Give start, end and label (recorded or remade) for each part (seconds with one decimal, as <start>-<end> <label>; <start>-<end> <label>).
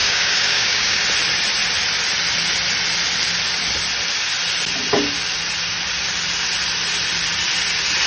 0.0-1.0 remade; 1.0-8.1 recorded